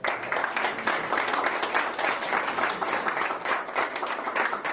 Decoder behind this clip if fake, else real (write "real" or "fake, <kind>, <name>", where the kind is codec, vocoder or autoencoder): real